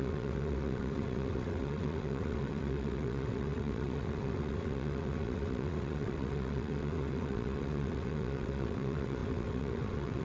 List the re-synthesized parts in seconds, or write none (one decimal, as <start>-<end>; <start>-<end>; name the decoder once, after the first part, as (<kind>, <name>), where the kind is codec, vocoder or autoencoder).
0.0-10.2 (vocoder, WaveNeXt)